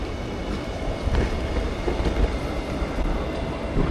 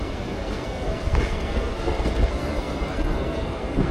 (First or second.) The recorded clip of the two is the first